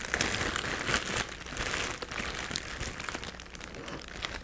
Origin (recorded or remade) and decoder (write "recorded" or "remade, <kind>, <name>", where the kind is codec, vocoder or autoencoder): recorded